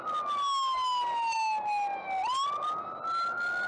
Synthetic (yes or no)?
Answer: no